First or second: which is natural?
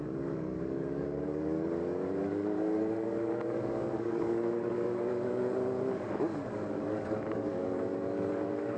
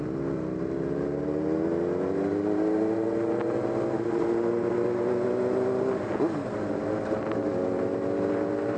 second